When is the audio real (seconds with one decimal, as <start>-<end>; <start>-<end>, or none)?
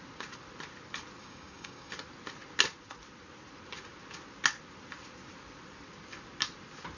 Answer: 0.0-1.2; 1.9-7.0